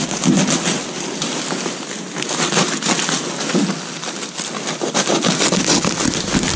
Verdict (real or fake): real